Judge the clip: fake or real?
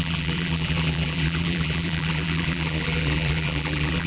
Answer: fake